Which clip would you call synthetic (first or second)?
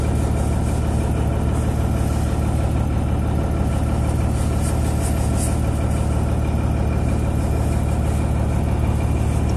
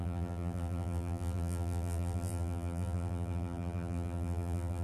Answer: second